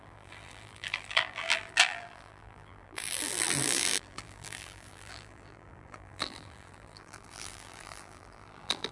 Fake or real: fake